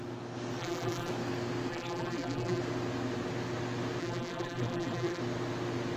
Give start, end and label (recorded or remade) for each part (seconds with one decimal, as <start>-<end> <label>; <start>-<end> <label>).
0.0-0.6 recorded; 0.6-1.1 remade; 1.1-1.7 recorded; 1.7-2.6 remade; 2.6-4.0 recorded; 4.0-5.2 remade; 5.2-6.0 recorded